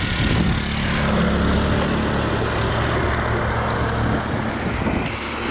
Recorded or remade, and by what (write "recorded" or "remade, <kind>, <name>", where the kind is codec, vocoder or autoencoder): recorded